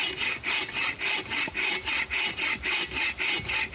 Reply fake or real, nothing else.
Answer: real